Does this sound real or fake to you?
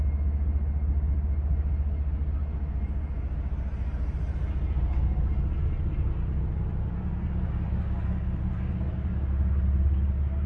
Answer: real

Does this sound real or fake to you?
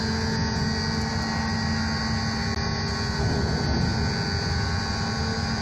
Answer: real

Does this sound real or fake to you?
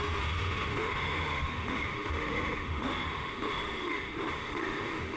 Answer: fake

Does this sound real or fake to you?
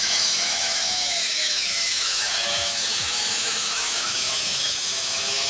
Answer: fake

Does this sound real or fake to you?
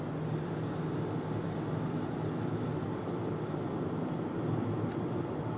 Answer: real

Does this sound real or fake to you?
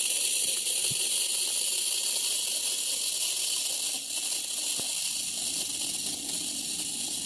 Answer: real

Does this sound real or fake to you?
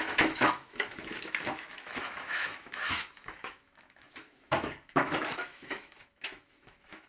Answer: fake